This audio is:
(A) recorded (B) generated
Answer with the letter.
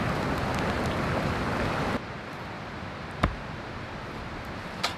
A